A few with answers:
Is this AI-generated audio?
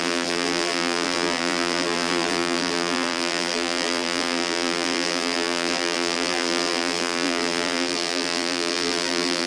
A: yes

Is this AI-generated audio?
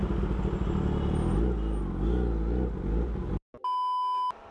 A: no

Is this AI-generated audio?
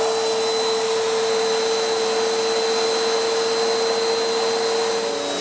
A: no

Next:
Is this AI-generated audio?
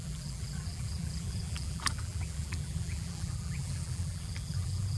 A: yes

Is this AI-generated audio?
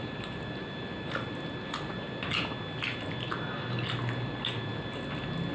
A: no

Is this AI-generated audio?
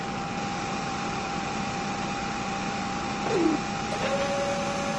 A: no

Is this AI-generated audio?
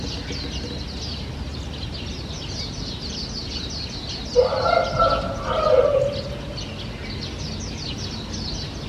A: no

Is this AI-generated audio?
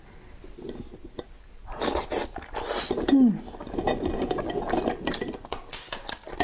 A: no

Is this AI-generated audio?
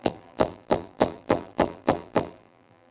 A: yes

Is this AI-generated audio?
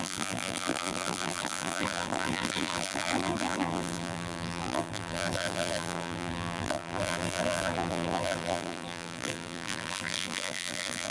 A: yes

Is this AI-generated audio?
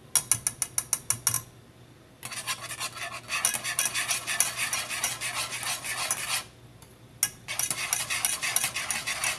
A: no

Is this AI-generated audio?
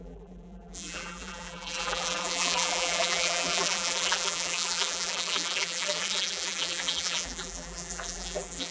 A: yes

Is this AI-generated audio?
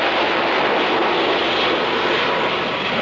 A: no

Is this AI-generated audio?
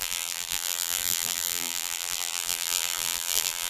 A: yes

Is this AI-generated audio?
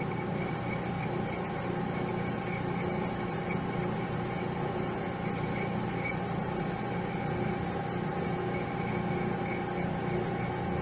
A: no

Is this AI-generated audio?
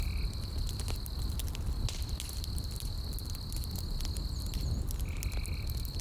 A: no